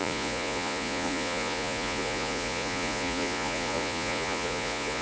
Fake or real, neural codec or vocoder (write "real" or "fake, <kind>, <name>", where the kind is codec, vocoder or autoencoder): fake, vocoder, Vocos